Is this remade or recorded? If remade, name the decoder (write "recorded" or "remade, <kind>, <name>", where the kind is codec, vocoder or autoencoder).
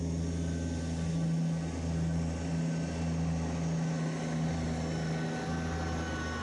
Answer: recorded